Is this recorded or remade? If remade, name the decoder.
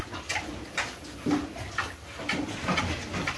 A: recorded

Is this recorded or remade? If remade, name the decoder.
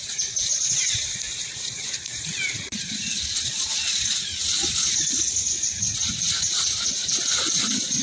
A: remade, vocoder, Vocos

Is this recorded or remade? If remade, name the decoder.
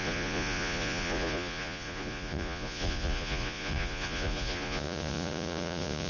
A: remade, vocoder, Vocos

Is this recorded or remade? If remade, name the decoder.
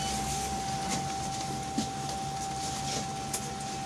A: recorded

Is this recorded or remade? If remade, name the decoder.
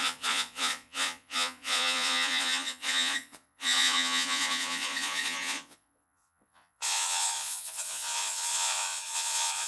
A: remade, vocoder, Vocos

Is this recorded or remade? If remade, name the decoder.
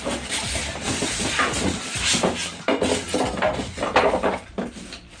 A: recorded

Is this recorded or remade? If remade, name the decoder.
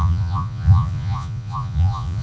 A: remade, vocoder, Vocos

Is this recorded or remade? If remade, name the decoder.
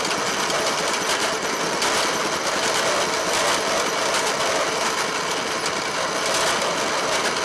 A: recorded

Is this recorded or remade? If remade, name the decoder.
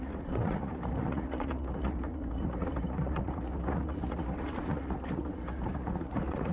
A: remade, vocoder, Vocos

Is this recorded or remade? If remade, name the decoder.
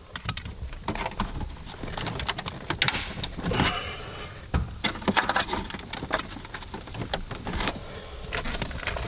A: recorded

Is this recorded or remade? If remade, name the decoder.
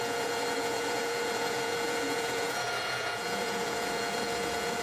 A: remade, vocoder, Vocos